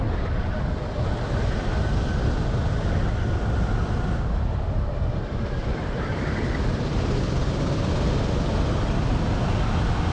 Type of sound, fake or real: real